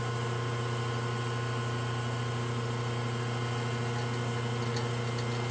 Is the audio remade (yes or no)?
no